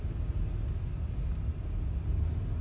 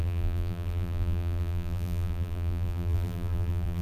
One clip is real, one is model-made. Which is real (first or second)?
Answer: first